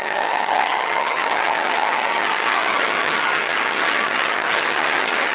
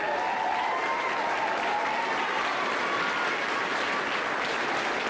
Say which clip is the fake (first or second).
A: first